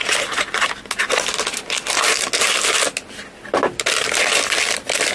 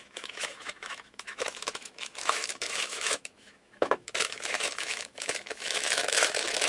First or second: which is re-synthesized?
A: second